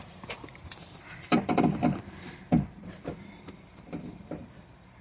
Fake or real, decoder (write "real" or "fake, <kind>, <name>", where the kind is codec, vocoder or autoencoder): fake, vocoder, BigVGAN v2